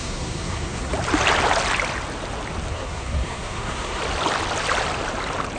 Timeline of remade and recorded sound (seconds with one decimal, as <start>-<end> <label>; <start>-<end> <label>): 0.0-0.9 remade; 0.9-2.7 recorded; 2.7-4.0 remade; 4.0-5.6 recorded